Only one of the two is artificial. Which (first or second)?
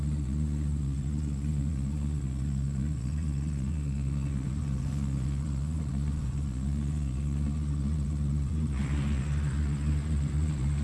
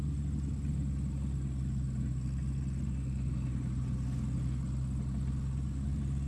first